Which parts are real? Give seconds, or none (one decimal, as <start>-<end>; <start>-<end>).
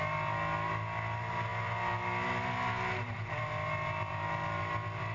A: 0.0-5.1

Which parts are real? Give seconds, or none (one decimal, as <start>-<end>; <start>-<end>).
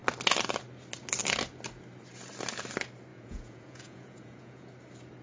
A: 0.0-3.1; 4.7-5.2